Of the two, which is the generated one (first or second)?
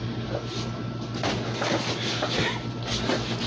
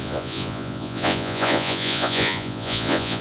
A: second